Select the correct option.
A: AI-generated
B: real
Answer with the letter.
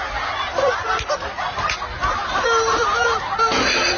B